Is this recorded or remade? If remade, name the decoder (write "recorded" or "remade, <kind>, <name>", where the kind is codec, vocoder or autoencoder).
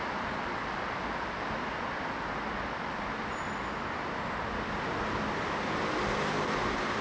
recorded